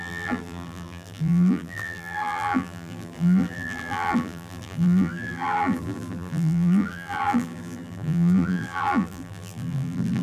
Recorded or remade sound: remade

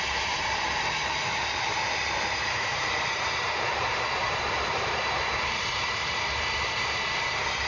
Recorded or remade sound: remade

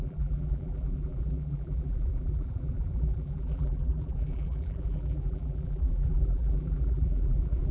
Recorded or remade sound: remade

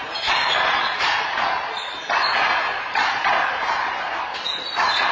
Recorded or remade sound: remade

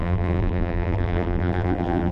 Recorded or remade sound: remade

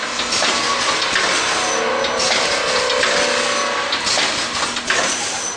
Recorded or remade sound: recorded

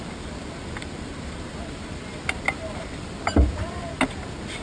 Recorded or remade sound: recorded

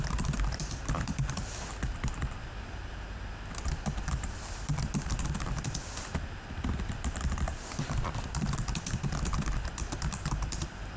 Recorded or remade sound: remade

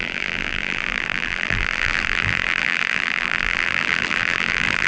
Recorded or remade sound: remade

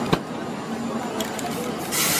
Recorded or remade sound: recorded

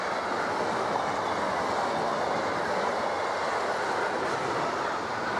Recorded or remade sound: recorded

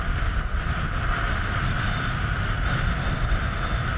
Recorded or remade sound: recorded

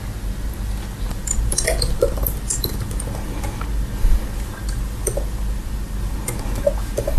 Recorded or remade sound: recorded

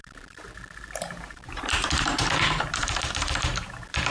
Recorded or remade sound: remade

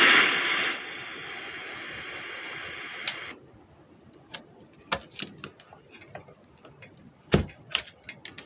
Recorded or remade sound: recorded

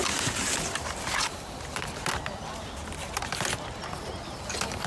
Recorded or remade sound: remade